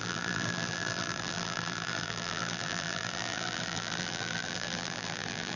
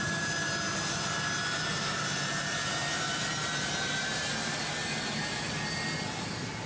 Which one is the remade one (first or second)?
first